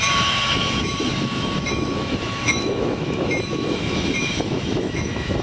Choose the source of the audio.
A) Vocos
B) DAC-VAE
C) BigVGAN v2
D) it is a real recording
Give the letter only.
B